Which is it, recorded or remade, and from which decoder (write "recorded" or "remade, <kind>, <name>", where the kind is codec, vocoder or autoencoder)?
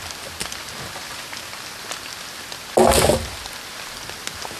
recorded